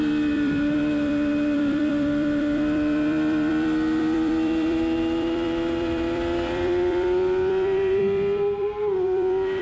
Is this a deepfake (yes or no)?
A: yes